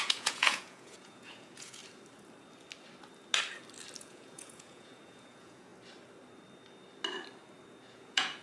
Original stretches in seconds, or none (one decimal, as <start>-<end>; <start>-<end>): 1.8-4.0; 5.7-7.9